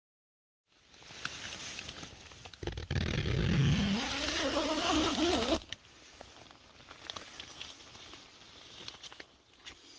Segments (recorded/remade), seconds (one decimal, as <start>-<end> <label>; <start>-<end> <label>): 0.0-10.0 recorded